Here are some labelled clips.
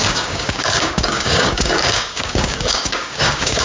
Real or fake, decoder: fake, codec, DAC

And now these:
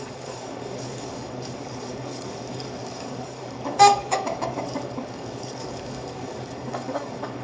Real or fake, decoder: fake, codec, DAC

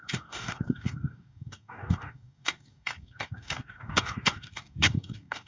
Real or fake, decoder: fake, codec, DAC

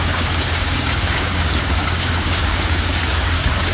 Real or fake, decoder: fake, codec, DAC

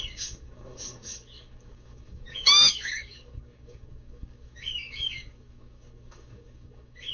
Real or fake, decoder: fake, codec, DAC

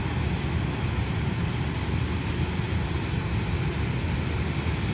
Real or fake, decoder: real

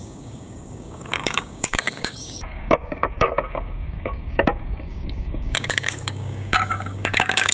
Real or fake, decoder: fake, codec, DAC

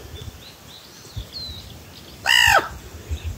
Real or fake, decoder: real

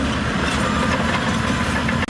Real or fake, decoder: real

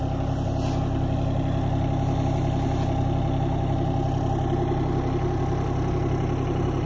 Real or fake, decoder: real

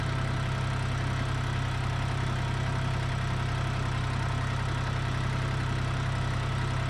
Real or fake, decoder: real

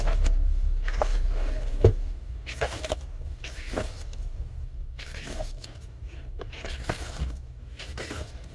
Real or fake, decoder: fake, codec, DAC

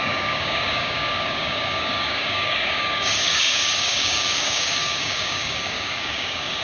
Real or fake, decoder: fake, codec, DAC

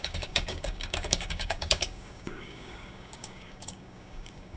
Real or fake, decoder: fake, codec, DAC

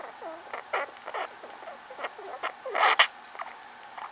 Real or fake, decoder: real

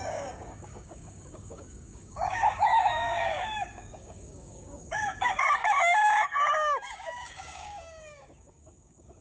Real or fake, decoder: fake, codec, DAC